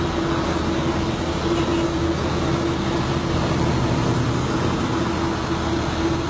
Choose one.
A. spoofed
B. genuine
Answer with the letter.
B